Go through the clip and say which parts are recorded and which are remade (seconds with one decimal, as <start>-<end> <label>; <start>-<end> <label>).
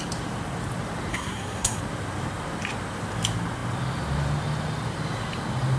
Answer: 0.0-1.1 recorded; 1.1-1.8 remade; 1.8-5.8 recorded